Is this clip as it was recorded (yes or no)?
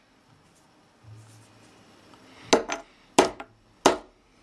yes